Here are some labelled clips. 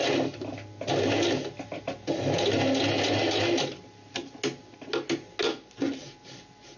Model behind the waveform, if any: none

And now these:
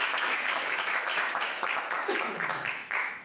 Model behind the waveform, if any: autoencoder, DAC-VAE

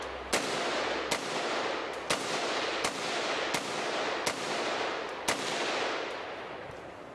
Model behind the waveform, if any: none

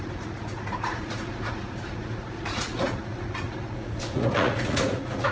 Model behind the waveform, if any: vocoder, Vocos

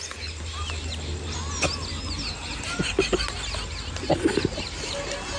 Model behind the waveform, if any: none